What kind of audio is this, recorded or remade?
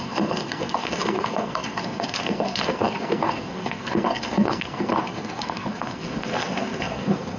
remade